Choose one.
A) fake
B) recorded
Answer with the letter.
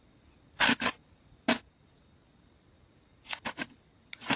B